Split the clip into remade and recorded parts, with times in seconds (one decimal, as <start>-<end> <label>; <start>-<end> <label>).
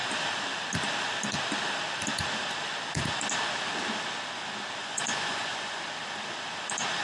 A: 0.0-4.8 recorded; 4.8-5.8 remade; 5.8-7.0 recorded